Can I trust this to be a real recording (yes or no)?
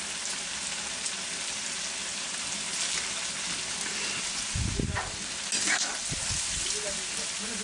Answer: yes